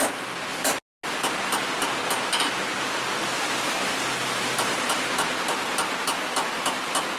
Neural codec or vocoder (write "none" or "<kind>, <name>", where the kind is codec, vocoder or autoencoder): none